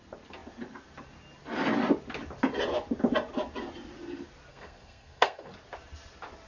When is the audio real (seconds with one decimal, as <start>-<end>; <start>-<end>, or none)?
0.0-4.5; 5.5-6.5